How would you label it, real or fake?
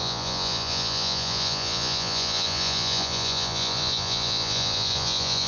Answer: fake